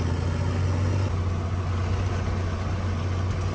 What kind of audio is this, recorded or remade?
recorded